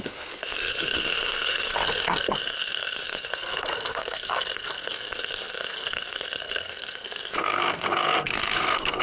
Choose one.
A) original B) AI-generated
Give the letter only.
B